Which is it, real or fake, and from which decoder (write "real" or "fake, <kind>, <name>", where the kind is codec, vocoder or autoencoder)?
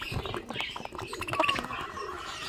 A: real